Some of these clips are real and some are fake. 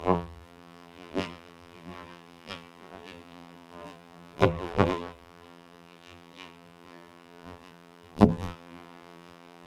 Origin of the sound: fake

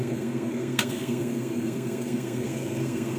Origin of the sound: fake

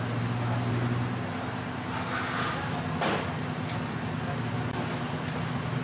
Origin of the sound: real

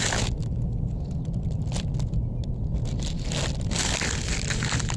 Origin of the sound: real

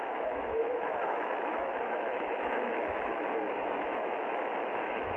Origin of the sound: fake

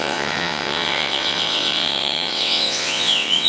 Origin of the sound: fake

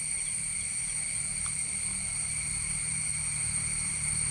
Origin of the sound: real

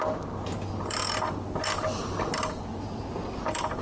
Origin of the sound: real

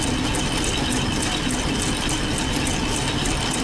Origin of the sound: real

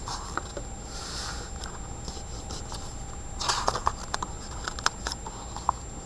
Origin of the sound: real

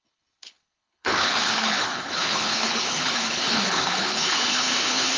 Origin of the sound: fake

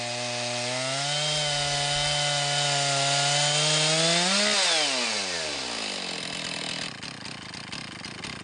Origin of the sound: real